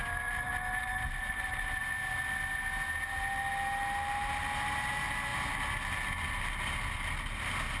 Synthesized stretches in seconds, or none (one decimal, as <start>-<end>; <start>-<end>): none

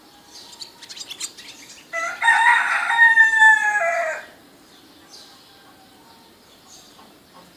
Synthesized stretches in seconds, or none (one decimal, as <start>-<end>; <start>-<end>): 0.0-0.9; 3.0-3.6; 6.5-7.6